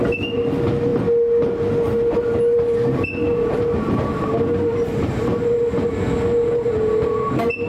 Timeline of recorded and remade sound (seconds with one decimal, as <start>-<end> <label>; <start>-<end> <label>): 0.0-7.7 recorded